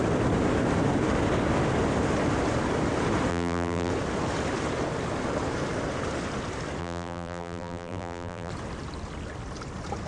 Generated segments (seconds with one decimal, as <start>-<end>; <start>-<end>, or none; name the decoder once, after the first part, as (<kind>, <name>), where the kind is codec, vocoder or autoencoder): 3.3-3.9 (vocoder, BigVGAN v2); 6.8-8.5